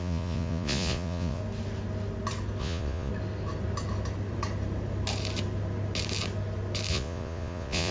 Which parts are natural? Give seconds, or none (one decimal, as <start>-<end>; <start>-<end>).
1.4-2.6; 3.1-6.9